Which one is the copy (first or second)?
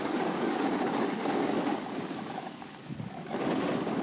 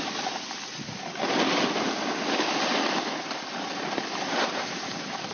first